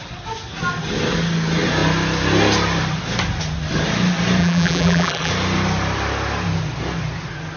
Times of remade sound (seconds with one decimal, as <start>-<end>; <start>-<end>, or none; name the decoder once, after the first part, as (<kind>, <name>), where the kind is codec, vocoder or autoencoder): 4.4-5.3 (vocoder, BigVGAN v2)